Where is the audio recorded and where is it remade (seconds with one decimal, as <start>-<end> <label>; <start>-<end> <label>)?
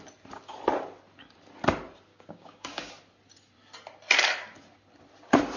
0.0-2.1 recorded; 2.1-2.9 remade; 2.9-5.6 recorded